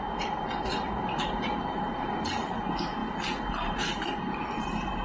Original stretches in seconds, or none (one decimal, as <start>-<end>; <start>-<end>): none